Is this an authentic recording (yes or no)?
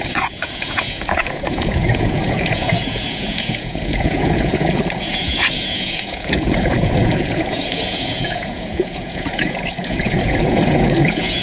no